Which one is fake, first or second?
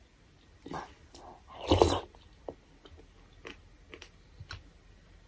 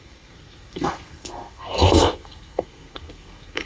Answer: second